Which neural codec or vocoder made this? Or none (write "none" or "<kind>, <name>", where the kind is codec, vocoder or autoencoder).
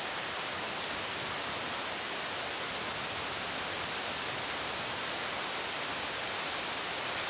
none